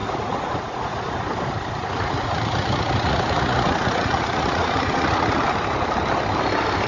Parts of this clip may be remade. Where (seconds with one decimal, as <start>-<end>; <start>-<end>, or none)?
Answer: 0.0-1.0; 1.8-5.4